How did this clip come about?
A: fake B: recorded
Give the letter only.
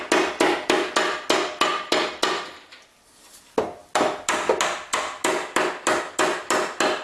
B